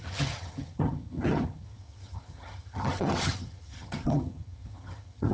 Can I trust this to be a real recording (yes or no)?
no